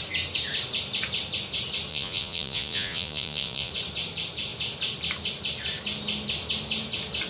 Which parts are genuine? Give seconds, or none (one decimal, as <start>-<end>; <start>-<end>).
0.0-1.9; 3.7-7.3